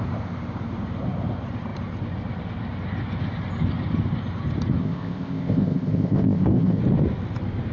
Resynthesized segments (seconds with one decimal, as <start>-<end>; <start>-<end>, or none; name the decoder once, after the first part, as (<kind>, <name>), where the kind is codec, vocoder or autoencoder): 4.8-6.8 (codec, ZipCodec)